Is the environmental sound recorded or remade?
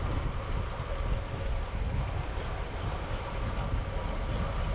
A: recorded